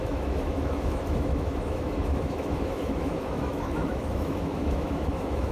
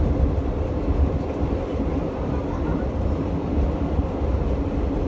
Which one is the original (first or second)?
second